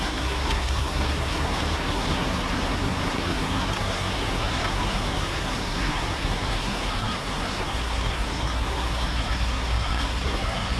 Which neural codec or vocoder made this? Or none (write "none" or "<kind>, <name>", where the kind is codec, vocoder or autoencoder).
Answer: codec, SNAC